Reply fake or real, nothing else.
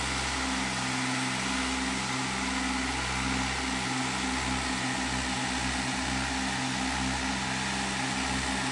real